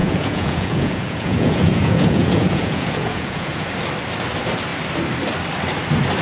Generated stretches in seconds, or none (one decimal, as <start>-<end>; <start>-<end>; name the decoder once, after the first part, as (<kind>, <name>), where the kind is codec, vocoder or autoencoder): 0.0-3.7 (vocoder, Vocos)

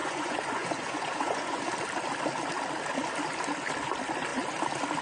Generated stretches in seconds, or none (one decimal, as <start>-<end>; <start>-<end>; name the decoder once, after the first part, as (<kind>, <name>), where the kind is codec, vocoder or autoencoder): 0.0-1.6 (vocoder, Vocos)

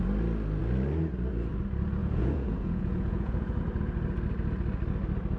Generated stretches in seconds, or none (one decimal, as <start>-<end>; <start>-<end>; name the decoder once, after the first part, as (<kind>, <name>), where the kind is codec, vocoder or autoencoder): 2.0-3.6 (vocoder, Vocos)

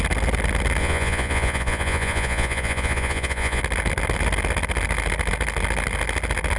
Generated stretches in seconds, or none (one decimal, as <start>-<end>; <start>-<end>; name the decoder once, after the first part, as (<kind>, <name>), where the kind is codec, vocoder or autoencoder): 0.8-3.6 (vocoder, Vocos)

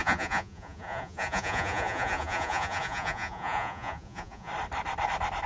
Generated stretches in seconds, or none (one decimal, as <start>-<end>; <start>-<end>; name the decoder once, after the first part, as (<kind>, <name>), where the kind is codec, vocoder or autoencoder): 0.0-4.5 (vocoder, Vocos)

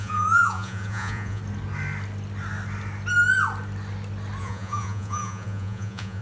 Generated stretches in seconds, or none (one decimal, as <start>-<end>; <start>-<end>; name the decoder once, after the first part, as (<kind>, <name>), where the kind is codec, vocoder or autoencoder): 0.0-1.4 (vocoder, Vocos); 4.4-6.2

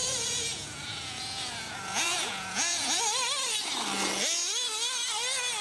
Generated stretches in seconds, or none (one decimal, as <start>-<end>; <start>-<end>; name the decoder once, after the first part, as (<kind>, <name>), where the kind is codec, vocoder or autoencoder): 0.0-3.0 (vocoder, Vocos)